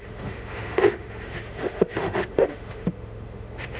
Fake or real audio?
fake